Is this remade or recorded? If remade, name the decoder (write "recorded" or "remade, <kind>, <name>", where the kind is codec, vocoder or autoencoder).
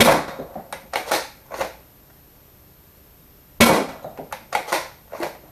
recorded